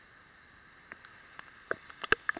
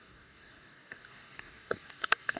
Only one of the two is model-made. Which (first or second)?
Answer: second